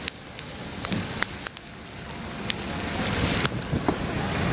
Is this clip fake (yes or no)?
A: no